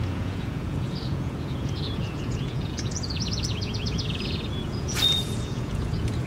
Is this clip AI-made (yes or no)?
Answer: yes